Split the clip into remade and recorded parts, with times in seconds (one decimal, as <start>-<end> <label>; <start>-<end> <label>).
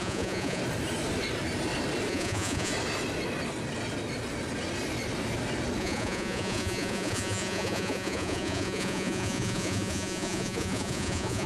0.0-0.6 remade; 0.6-2.1 recorded; 2.1-2.7 remade; 2.7-5.8 recorded; 5.8-11.5 remade